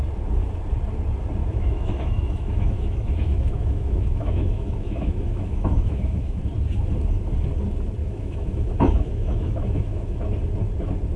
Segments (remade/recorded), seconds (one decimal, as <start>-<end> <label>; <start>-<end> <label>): 0.0-1.4 recorded; 1.4-6.4 remade; 6.4-8.0 recorded; 8.0-10.2 remade; 10.2-11.2 recorded